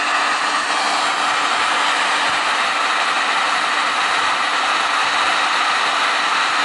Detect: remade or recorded recorded